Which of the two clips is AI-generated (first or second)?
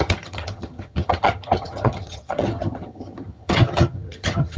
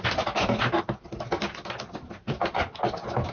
first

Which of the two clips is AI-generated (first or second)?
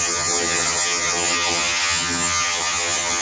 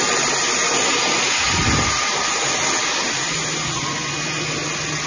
first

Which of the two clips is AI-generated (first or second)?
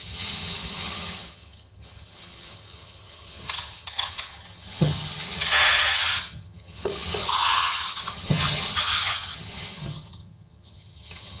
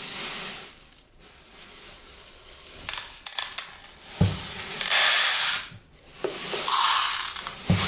first